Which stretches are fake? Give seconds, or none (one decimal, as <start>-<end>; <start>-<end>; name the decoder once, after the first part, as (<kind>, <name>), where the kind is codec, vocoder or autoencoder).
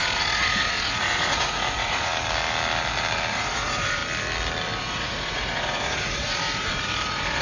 0.0-2.1 (vocoder, Vocos); 3.3-4.0; 4.8-7.4